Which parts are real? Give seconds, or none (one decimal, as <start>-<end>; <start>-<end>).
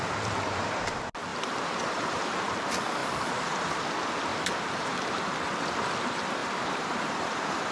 0.0-1.3; 2.5-3.0; 3.7-4.3; 5.3-6.4